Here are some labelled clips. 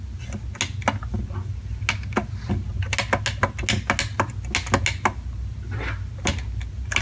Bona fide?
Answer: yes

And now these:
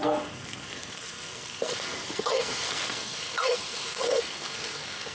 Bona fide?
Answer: no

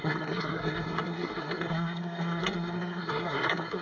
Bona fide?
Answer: no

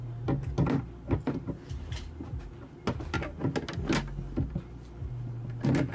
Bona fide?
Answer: yes